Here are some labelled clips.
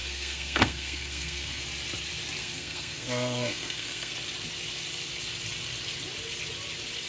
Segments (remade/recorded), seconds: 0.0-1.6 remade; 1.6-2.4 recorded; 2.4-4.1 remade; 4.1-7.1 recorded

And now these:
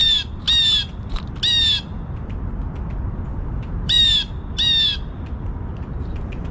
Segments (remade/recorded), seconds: 0.0-3.3 recorded; 3.3-4.1 remade; 4.1-6.5 recorded

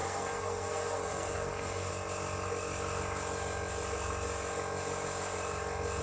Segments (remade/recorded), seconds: 0.0-1.9 remade; 1.9-6.0 recorded

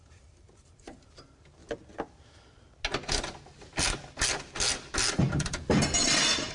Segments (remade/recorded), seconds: 0.0-1.6 remade; 1.6-5.1 recorded; 5.1-6.5 remade

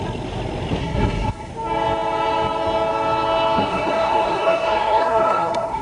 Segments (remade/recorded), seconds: 0.0-0.8 recorded; 0.8-1.5 remade; 1.5-3.6 recorded; 3.6-5.8 remade